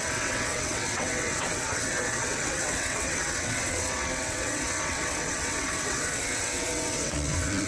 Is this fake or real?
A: fake